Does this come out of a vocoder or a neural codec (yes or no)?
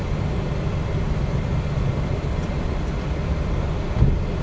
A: no